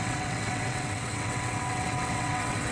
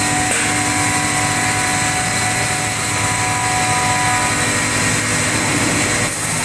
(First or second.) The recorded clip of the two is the second